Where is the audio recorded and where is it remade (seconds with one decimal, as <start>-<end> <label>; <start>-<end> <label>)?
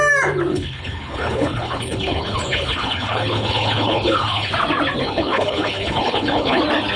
0.0-0.5 recorded; 0.5-4.5 remade; 4.5-5.0 recorded; 5.0-6.6 remade; 6.6-7.0 recorded